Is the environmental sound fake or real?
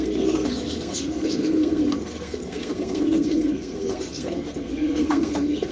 fake